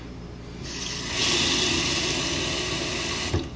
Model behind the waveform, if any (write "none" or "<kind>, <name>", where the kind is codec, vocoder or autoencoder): none